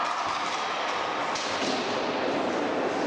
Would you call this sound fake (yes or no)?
no